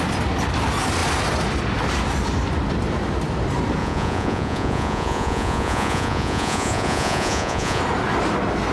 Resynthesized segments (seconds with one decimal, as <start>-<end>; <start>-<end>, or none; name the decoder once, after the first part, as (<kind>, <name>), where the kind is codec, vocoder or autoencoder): 3.8-7.8 (vocoder, Vocos)